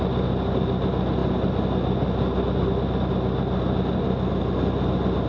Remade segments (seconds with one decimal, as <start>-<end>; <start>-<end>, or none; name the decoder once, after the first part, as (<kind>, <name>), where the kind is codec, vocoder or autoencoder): none

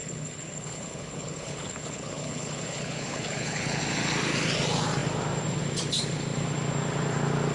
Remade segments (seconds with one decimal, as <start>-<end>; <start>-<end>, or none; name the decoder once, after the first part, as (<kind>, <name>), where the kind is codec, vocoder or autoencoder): 0.0-3.8 (codec, HILCodec)